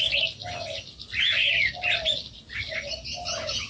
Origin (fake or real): real